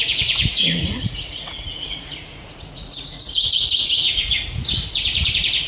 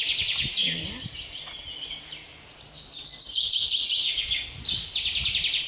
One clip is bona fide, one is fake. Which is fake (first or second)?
first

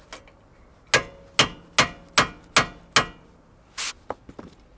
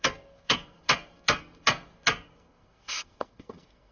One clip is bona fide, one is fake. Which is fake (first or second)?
second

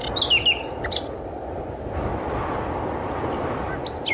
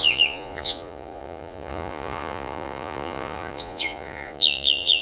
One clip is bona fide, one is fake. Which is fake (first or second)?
second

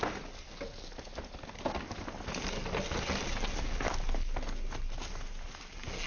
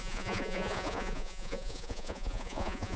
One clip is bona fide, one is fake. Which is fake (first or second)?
second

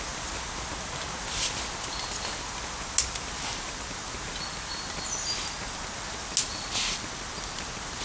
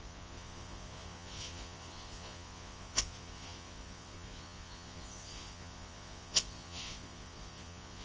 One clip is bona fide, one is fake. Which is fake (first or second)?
second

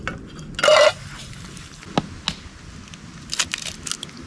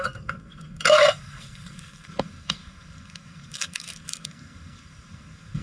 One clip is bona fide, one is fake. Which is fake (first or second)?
second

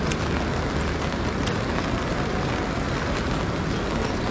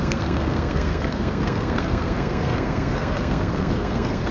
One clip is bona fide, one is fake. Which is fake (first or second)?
second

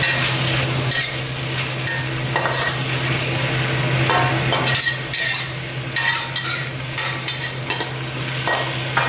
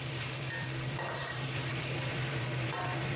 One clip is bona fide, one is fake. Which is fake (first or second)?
second